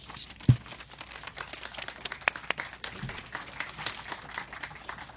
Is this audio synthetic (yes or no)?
no